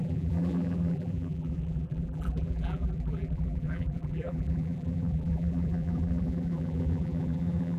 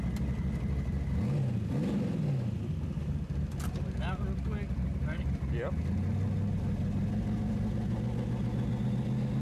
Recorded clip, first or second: second